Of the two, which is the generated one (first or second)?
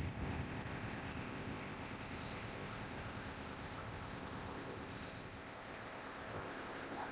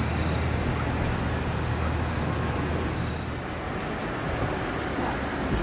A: first